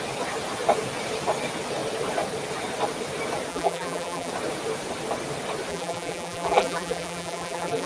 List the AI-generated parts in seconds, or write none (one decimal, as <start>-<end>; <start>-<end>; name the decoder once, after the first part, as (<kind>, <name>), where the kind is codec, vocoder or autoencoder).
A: 3.5-4.3 (vocoder, BigVGAN v2); 5.7-7.9